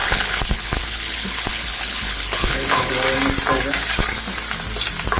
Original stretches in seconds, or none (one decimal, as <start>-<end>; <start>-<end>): 2.9-5.2